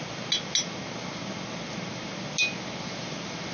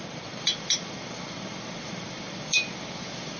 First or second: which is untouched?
first